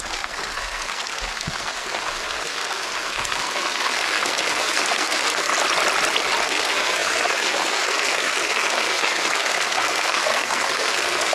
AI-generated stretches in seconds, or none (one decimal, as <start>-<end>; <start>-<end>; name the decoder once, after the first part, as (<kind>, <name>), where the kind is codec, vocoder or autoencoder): 0.0-5.5 (codec, SNAC); 6.4-11.3